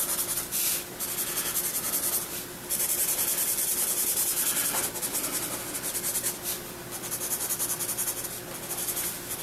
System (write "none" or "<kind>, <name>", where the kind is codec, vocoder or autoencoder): none